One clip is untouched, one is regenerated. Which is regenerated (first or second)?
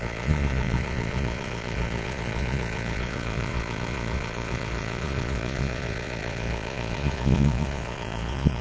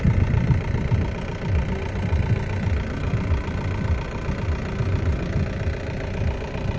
first